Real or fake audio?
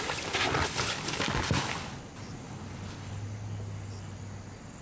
real